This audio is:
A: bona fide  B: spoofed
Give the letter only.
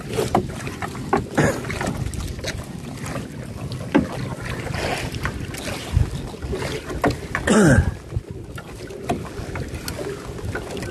A